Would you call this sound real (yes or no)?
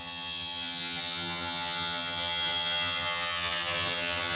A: no